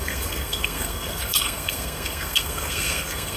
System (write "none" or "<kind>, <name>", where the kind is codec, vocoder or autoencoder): codec, SNAC